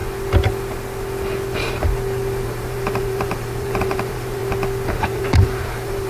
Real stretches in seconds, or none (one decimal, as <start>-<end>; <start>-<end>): 0.0-2.4; 4.4-4.9